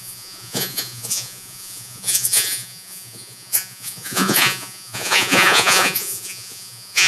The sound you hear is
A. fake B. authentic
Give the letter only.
A